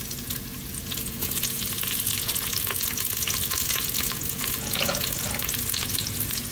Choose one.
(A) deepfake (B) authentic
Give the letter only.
A